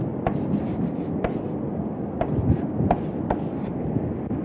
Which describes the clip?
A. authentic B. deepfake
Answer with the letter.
A